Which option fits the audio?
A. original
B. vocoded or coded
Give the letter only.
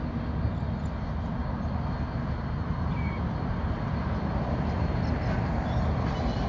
A